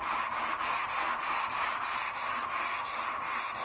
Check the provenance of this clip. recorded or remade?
recorded